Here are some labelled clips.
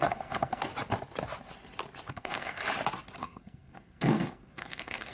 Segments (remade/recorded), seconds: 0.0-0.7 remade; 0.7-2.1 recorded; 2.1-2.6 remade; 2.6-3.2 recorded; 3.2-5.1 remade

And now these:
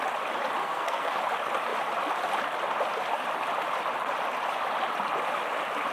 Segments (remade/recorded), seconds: 0.0-0.6 recorded; 0.6-1.2 remade; 1.2-5.9 recorded

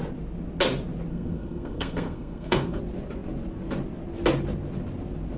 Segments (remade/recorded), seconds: 0.0-1.1 recorded; 1.1-2.8 remade; 2.8-5.4 recorded

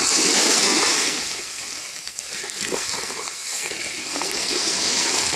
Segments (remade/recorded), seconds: 0.0-5.4 remade

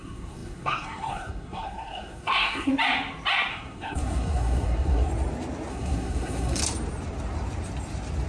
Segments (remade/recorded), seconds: 0.0-2.7 remade; 2.7-3.5 recorded; 3.5-5.1 remade; 5.1-5.7 recorded; 5.7-6.6 remade; 6.6-8.3 recorded

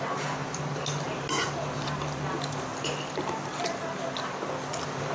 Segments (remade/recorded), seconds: 0.0-5.1 recorded